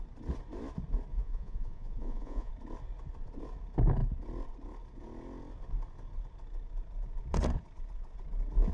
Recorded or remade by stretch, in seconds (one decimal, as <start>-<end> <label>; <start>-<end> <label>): 0.0-1.1 recorded; 1.1-2.5 remade; 2.5-8.7 recorded